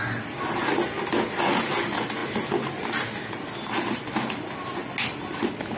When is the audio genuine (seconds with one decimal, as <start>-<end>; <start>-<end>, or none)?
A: 0.0-5.8